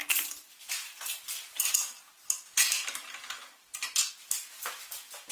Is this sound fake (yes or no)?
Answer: no